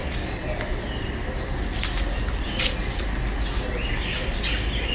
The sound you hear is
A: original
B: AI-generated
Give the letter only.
A